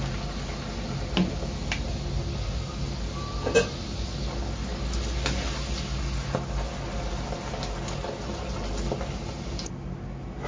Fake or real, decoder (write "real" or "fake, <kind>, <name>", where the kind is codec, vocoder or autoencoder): real